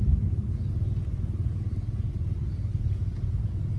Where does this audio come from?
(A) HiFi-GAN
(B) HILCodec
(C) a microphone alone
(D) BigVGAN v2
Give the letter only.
C